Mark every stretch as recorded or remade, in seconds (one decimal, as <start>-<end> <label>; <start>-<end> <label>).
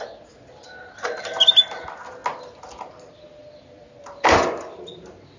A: 0.0-5.4 recorded